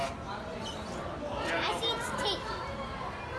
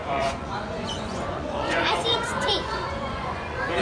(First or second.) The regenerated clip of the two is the second